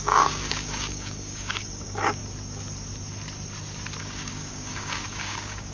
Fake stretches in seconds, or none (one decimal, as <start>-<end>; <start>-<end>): 0.0-2.2; 4.0-5.7